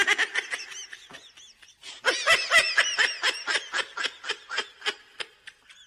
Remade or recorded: recorded